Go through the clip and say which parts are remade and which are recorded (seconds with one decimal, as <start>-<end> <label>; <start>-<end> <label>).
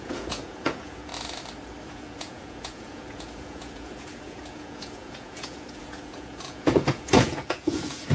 0.0-1.1 remade; 1.1-1.9 recorded; 1.9-8.1 remade